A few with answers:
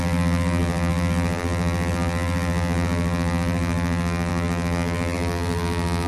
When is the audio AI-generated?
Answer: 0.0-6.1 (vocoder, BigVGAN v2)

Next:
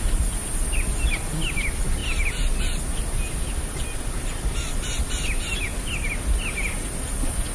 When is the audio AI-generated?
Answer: none

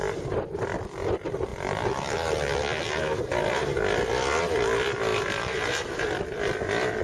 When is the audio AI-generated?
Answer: 5.1-6.1 (vocoder, BigVGAN v2)